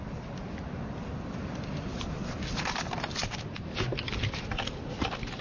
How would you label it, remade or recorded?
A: recorded